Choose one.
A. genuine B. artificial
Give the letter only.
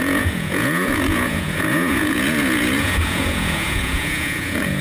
B